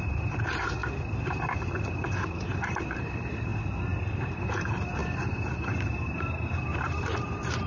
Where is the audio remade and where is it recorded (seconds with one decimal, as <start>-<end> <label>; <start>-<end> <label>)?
0.0-0.8 remade; 0.8-1.9 recorded; 1.9-7.7 remade